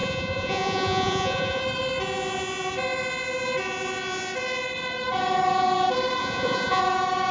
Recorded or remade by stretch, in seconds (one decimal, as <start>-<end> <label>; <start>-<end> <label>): 0.0-1.6 remade; 1.6-6.2 recorded; 6.2-6.8 remade; 6.8-7.3 recorded